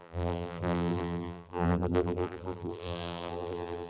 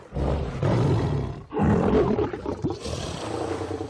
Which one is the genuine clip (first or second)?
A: second